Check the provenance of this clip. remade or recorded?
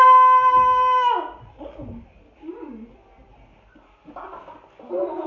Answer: recorded